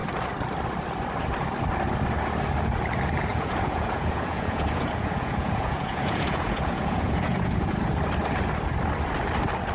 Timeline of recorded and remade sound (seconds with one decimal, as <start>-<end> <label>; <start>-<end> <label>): 0.0-3.3 recorded; 3.3-7.8 remade; 7.8-9.7 recorded

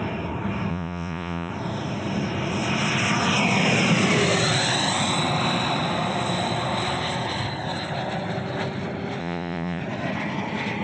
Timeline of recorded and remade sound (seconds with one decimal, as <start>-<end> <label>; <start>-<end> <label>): 0.0-0.7 recorded; 0.7-1.5 remade; 1.5-9.2 recorded; 9.2-9.8 remade; 9.8-10.8 recorded

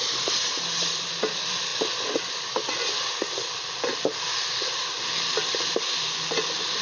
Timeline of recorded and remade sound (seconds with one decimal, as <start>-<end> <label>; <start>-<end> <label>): 0.0-6.8 recorded